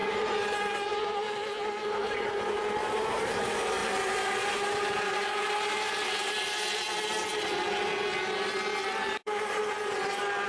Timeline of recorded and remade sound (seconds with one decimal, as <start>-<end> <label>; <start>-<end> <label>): 0.0-3.4 remade; 3.4-3.8 recorded; 3.8-5.5 remade; 5.5-8.8 recorded; 8.8-9.6 remade; 9.6-10.5 recorded